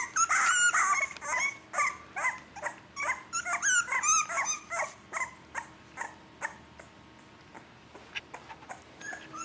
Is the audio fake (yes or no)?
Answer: no